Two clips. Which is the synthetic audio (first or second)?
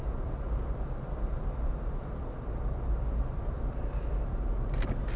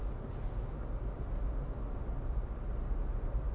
first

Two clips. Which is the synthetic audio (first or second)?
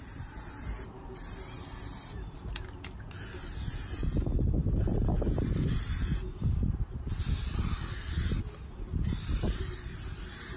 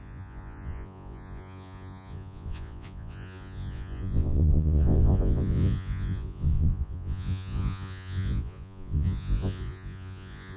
second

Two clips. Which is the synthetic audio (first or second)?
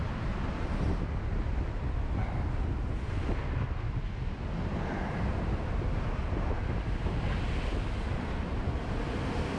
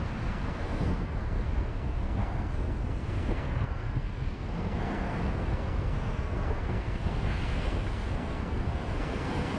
second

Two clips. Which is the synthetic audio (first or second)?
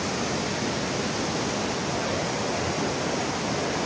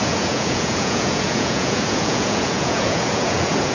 second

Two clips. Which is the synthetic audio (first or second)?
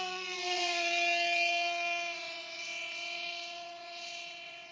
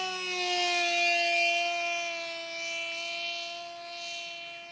first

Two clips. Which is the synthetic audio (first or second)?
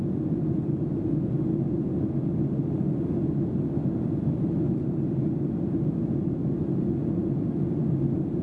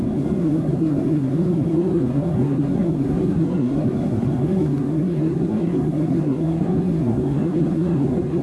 second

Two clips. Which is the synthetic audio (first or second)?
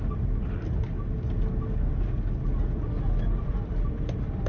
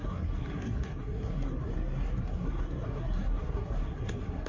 second